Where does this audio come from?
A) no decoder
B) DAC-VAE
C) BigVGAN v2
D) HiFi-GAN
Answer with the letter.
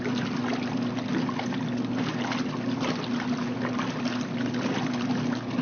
A